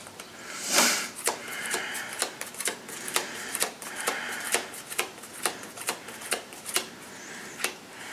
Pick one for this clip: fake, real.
fake